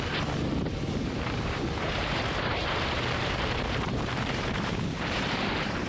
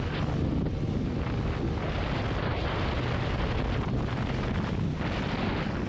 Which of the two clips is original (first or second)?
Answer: second